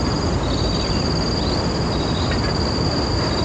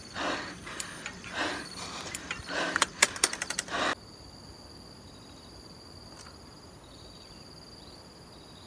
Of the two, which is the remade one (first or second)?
second